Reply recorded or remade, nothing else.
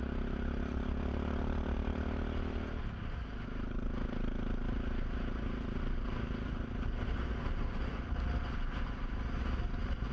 recorded